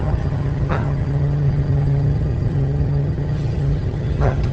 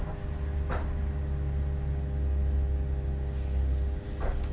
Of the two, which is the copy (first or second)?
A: first